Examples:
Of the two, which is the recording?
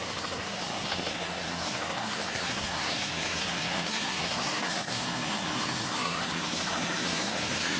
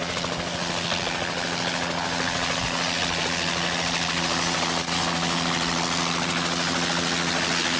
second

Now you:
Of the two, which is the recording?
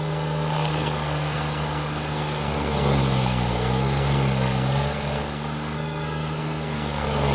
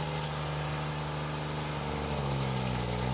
second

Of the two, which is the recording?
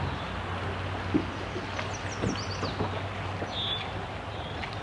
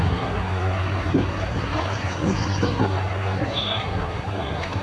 first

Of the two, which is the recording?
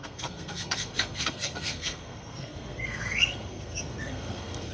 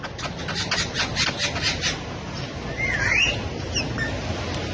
second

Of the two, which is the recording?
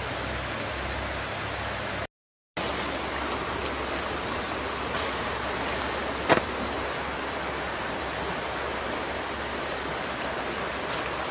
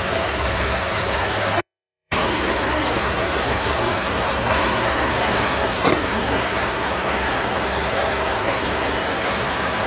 first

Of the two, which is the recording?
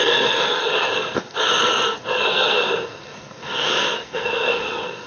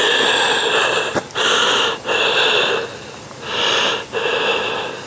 second